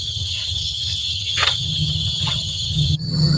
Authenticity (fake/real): fake